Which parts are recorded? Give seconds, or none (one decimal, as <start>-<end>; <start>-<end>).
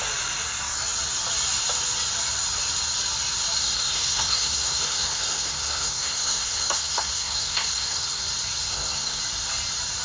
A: 0.0-3.6; 8.2-8.6; 9.2-10.0